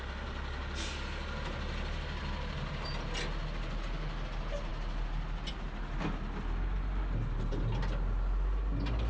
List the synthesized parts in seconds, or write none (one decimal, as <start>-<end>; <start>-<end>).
none